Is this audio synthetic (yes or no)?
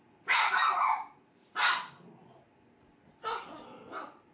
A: no